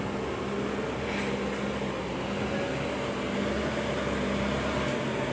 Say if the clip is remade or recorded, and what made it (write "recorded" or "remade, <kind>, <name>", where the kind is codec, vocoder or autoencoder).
recorded